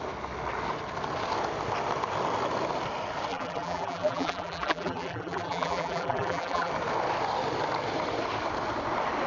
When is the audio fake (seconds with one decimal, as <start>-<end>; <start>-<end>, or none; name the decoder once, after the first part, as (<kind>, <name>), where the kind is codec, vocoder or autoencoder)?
3.3-6.7 (vocoder, BigVGAN v2)